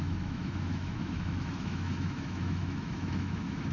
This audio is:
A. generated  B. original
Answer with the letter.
A